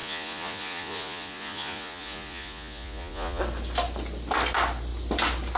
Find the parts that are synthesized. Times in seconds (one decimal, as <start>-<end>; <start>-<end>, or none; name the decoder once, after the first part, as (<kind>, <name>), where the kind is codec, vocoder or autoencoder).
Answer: 0.0-3.4 (vocoder, Vocos)